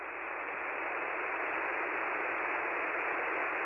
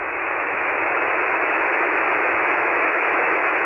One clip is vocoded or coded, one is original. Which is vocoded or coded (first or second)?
second